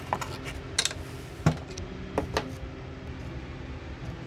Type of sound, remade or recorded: recorded